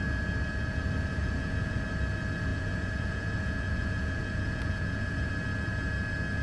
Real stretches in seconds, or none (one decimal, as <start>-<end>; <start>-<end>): 0.0-1.2; 1.8-2.5; 5.3-6.4